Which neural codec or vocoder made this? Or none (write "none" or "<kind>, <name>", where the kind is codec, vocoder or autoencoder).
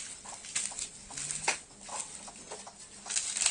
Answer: none